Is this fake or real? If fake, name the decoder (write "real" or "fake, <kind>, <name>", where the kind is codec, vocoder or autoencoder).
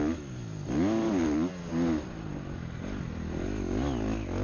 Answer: real